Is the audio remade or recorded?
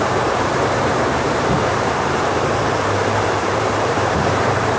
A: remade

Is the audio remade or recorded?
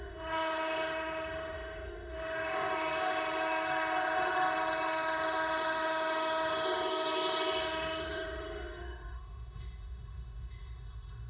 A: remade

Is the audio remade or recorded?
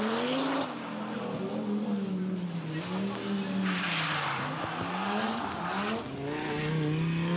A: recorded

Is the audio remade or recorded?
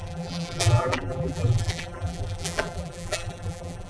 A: remade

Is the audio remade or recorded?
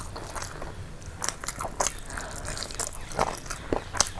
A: recorded